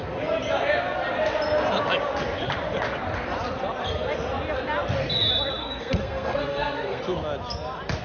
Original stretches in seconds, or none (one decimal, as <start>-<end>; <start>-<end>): 0.0-5.6; 7.0-8.0